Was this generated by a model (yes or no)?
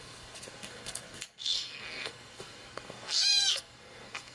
yes